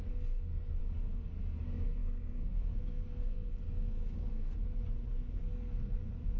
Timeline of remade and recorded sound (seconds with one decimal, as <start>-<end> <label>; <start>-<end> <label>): 0.0-0.8 remade; 0.8-1.6 recorded; 1.6-4.6 remade; 4.6-5.2 recorded; 5.2-6.4 remade